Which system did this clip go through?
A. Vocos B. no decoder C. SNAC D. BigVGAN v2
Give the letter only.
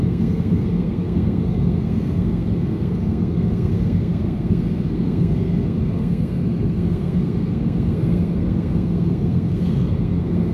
C